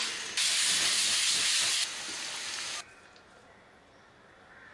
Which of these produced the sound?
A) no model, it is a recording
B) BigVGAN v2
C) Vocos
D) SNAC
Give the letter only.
A